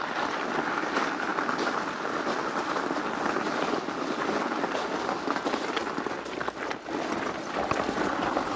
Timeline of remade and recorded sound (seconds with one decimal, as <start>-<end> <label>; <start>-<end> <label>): 0.0-8.6 recorded